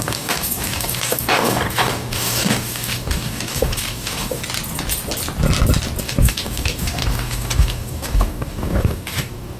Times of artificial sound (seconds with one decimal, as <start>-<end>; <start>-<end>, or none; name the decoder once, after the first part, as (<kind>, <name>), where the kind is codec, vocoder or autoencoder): 0.0-4.4 (codec, DAC); 6.0-9.6